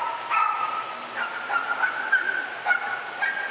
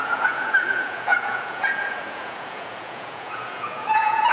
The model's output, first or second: second